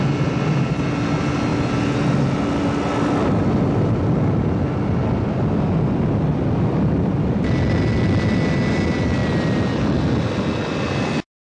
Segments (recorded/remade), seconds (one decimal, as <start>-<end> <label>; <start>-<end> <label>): 0.0-11.6 recorded